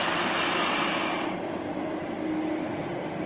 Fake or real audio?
real